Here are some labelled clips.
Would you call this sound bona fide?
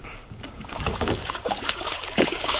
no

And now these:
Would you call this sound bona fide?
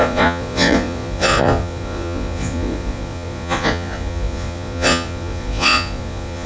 no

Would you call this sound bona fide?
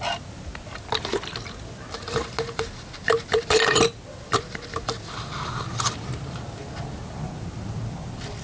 yes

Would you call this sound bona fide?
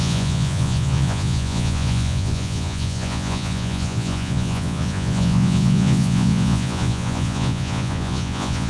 no